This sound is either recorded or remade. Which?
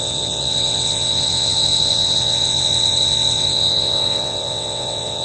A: remade